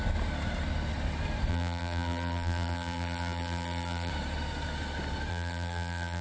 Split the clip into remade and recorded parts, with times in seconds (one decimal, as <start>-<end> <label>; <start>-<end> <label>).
0.0-1.5 recorded; 1.5-4.1 remade; 4.1-5.3 recorded; 5.3-6.2 remade